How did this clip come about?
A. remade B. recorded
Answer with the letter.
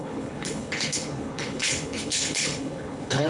A